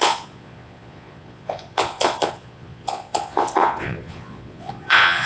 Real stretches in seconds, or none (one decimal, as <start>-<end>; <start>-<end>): none